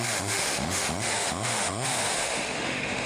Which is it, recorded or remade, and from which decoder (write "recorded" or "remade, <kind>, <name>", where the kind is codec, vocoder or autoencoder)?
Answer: remade, autoencoder, DAC-VAE